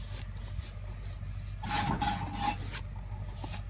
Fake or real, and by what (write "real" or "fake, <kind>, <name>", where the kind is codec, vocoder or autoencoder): real